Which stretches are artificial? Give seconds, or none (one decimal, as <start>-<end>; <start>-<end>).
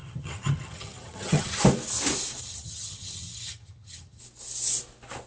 0.0-1.6; 2.4-4.2